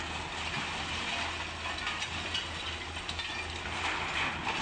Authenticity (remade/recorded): recorded